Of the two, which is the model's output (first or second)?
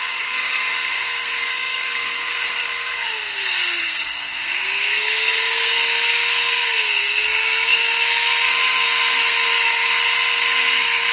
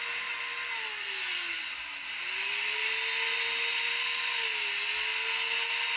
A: first